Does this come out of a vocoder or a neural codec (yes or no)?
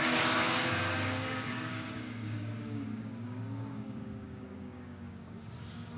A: yes